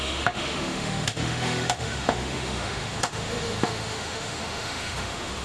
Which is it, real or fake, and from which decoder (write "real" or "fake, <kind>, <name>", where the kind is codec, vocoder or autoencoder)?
fake, autoencoder, DAC-VAE